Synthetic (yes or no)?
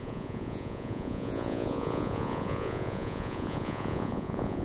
yes